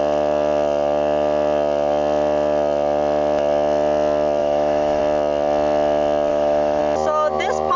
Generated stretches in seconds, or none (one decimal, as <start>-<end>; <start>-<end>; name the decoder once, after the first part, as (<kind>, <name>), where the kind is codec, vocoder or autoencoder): 4.4-5.0 (autoencoder, DAC-VAE); 6.3-6.8